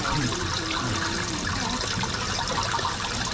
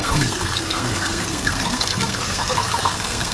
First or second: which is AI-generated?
second